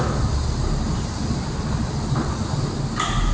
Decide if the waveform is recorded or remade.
recorded